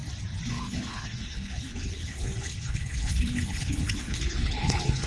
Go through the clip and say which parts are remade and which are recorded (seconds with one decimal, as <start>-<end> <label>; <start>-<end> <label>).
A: 0.0-0.5 recorded; 0.5-5.1 remade

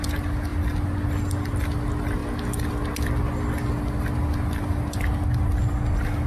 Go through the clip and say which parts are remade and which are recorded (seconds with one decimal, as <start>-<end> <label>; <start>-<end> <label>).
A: 0.0-6.3 recorded

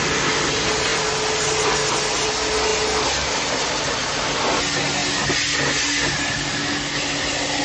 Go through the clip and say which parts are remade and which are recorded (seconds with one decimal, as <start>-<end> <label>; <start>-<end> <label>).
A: 0.0-7.6 recorded

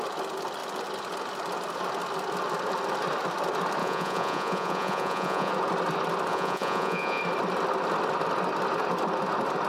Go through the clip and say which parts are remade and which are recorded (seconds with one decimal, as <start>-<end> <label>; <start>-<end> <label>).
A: 0.0-3.8 recorded; 3.8-5.5 remade; 5.5-6.3 recorded; 6.3-7.2 remade; 7.2-9.7 recorded

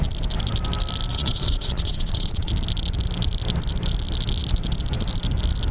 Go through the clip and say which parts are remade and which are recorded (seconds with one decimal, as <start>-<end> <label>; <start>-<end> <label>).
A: 0.0-1.1 recorded; 1.1-2.5 remade; 2.5-5.7 recorded

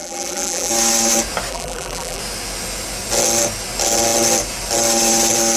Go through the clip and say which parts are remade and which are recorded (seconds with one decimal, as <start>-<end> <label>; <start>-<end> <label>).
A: 0.0-0.7 remade; 0.7-1.5 recorded; 1.5-2.2 remade; 2.2-5.6 recorded

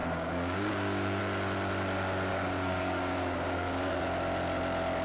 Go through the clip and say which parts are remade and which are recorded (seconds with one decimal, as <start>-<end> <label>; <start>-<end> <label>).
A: 0.0-1.2 remade; 1.2-2.3 recorded; 2.3-4.0 remade; 4.0-5.0 recorded